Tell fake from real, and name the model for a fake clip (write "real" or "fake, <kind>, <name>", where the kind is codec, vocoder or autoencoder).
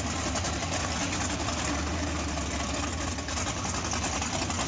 real